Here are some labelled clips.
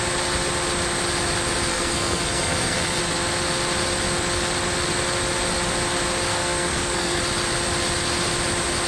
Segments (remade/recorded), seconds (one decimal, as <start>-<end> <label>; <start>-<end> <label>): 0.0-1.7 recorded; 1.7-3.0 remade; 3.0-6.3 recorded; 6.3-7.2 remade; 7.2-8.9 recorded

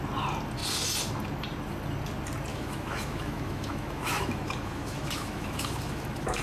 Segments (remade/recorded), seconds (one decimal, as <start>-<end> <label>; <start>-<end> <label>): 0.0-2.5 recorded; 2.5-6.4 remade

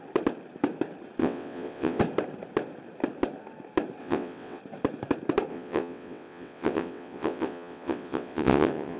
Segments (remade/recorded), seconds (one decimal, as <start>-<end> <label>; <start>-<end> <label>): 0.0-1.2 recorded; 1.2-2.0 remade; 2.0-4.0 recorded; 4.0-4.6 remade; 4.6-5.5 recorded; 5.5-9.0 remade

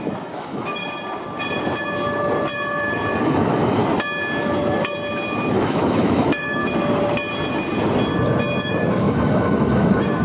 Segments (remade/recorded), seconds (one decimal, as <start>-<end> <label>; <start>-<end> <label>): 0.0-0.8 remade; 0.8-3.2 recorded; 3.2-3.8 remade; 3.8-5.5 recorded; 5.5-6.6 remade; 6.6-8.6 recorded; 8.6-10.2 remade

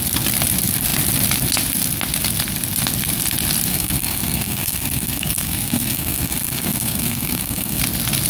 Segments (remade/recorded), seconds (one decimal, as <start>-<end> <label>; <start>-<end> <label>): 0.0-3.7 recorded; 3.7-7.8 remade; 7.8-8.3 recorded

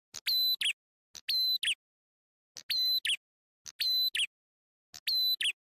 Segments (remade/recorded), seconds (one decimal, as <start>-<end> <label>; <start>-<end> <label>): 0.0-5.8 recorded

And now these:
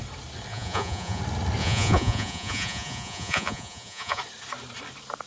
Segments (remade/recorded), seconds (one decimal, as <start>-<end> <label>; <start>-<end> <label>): 0.0-0.5 recorded; 0.5-1.2 remade; 1.2-1.6 recorded; 1.6-4.2 remade; 4.2-5.3 recorded